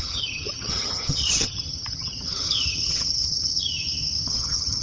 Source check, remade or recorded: remade